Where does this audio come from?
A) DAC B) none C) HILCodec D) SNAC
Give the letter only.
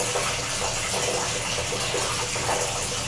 B